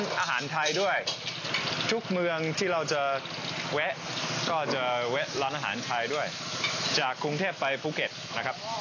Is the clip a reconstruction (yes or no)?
no